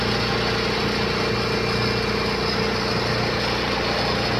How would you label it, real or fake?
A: real